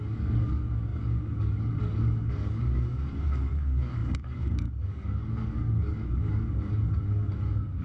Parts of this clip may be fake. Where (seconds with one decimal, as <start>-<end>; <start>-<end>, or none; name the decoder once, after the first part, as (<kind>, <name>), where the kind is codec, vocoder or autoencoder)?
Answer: 0.0-7.8 (codec, DAC)